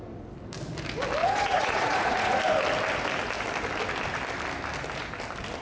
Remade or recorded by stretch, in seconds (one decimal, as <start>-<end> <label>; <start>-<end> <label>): 0.0-1.2 recorded; 1.2-2.4 remade; 2.4-5.6 recorded